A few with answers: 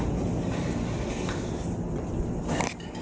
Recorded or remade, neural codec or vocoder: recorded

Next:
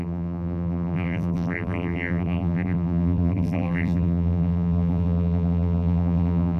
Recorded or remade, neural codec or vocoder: remade, vocoder, BigVGAN v2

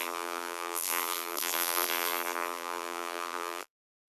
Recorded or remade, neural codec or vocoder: remade, vocoder, BigVGAN v2